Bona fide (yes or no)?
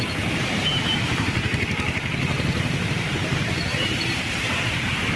no